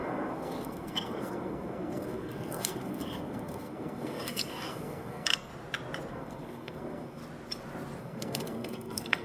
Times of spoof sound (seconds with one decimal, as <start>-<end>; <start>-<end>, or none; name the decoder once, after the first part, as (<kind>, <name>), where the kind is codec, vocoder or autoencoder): 0.0-5.5 (codec, SNAC); 6.1-7.2; 8.0-9.2